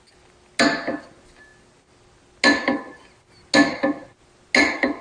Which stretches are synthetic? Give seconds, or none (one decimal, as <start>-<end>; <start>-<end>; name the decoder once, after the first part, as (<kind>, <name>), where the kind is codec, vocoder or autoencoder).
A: none